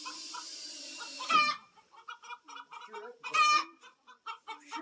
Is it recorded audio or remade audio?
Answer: remade